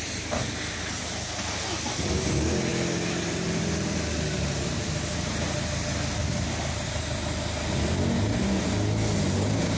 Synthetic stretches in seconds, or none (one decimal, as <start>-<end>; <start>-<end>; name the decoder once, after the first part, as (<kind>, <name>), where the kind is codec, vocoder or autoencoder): none